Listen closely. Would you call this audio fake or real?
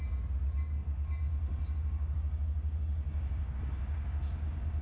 real